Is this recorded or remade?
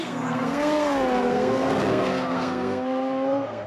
remade